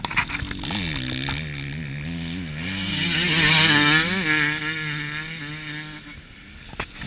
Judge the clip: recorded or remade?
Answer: recorded